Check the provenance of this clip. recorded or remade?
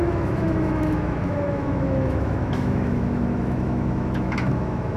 remade